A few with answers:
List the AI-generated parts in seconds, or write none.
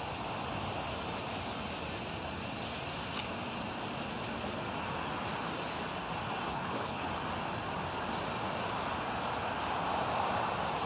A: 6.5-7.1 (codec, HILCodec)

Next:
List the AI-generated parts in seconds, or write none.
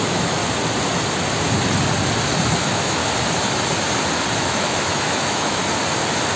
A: 0.0-0.4 (autoencoder, DAC-VAE); 2.6-3.0; 4.4-5.6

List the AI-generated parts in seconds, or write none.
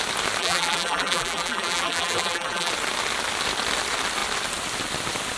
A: 0.4-2.7 (vocoder, BigVGAN v2)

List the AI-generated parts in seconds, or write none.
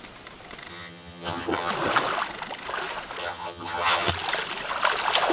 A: 0.7-1.7 (vocoder, HiFi-GAN); 3.2-4.1